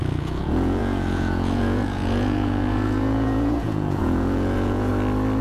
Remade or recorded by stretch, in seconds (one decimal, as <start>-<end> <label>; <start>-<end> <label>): 0.0-4.9 remade; 4.9-5.4 recorded